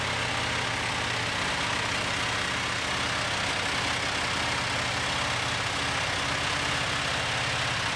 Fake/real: real